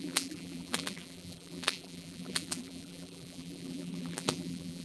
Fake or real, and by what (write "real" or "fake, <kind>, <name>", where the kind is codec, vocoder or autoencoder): fake, vocoder, BigVGAN v2